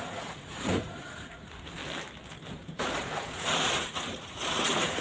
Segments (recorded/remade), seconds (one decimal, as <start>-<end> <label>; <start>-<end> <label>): 0.0-1.8 remade; 1.8-2.5 recorded; 2.5-5.0 remade